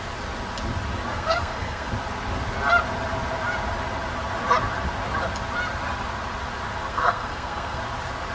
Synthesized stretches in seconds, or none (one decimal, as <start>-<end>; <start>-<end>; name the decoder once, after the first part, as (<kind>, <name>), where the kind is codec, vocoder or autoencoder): 1.1-1.9 (codec, SNAC); 6.9-7.8